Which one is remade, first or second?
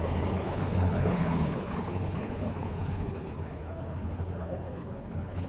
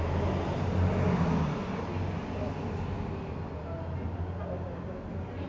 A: first